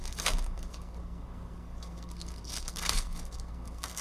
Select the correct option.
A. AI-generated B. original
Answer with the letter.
A